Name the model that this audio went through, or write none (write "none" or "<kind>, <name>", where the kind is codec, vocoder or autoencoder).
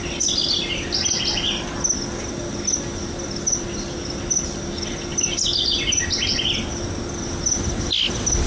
none